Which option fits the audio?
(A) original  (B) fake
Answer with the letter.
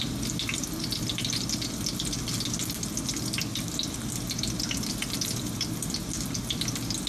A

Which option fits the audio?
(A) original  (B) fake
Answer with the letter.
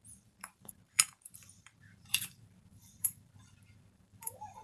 B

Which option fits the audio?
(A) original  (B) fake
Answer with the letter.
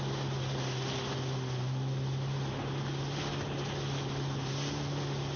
A